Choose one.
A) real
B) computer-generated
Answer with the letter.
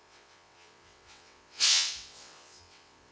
B